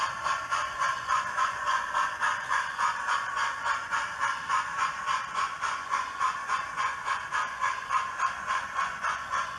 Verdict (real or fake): fake